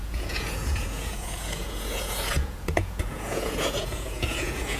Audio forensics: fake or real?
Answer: fake